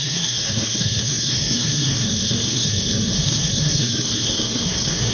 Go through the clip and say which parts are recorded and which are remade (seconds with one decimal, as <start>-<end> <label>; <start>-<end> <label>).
0.0-5.1 remade